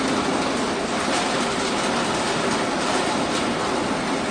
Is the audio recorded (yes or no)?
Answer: yes